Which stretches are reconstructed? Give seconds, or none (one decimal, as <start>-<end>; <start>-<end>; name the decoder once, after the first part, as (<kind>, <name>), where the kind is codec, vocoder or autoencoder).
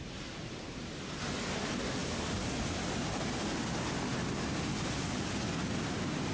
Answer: none